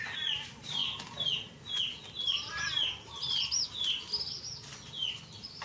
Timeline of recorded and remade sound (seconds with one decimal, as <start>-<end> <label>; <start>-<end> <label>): 0.0-5.6 recorded